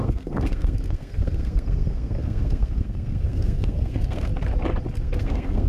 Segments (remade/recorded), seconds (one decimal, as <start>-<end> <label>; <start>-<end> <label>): 0.0-4.3 remade; 4.3-5.0 recorded; 5.0-5.7 remade